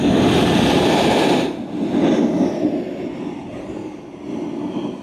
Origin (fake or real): real